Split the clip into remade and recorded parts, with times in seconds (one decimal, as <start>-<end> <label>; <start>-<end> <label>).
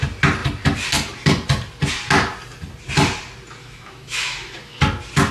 0.0-3.6 recorded; 3.6-4.8 remade; 4.8-5.3 recorded